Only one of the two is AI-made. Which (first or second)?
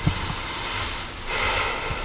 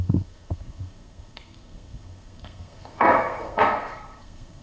second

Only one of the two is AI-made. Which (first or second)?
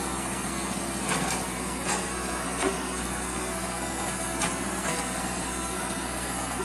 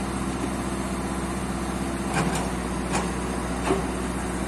first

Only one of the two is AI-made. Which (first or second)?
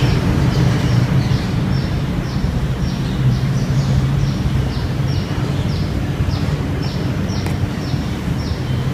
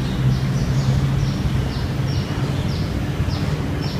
first